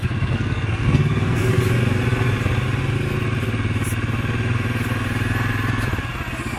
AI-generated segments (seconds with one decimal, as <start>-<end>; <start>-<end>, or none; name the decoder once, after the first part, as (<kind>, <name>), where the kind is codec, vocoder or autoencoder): 0.0-1.6 (codec, SNAC)